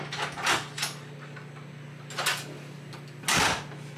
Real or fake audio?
real